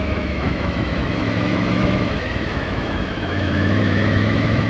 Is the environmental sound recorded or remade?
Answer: remade